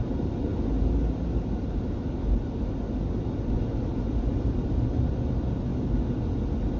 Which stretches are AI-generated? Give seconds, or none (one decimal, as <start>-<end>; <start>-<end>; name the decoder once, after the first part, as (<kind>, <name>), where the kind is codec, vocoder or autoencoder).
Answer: none

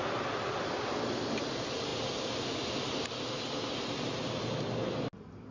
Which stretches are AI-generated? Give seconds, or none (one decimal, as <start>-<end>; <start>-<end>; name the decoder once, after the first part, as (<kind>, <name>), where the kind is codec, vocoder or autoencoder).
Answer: none